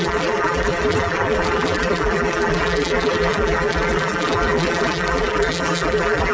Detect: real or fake fake